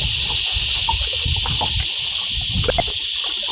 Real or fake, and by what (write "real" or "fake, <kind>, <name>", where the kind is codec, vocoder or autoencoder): real